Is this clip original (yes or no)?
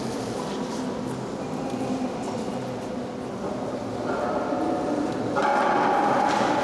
yes